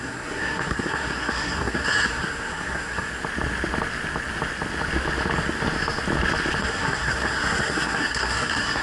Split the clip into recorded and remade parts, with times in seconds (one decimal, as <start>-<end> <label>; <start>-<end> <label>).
0.0-3.1 remade; 3.1-6.6 recorded; 6.6-8.8 remade